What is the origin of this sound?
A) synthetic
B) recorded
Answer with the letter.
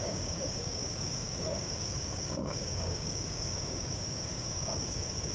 A